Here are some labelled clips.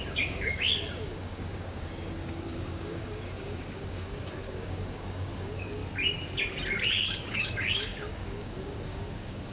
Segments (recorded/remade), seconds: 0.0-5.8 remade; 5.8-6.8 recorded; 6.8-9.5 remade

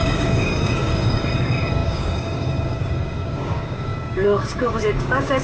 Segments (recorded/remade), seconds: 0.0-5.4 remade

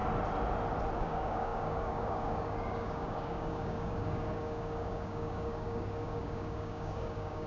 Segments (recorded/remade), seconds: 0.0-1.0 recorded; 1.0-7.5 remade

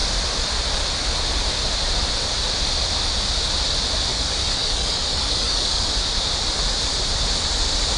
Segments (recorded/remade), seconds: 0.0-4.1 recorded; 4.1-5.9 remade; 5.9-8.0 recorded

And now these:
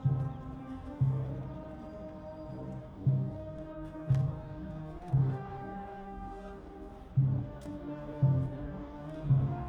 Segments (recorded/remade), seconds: 0.0-0.6 recorded; 0.6-1.3 remade; 1.3-2.8 recorded; 2.8-6.9 remade; 6.9-7.4 recorded; 7.4-9.7 remade

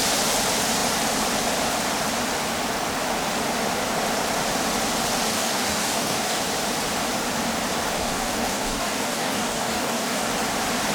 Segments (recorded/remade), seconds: 0.0-5.3 recorded; 5.3-6.4 remade; 6.4-8.0 recorded; 8.0-10.3 remade; 10.3-10.9 recorded